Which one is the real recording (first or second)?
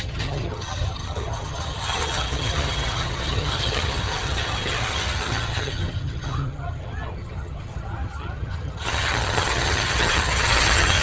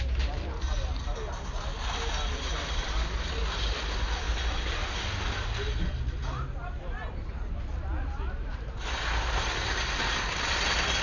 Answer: second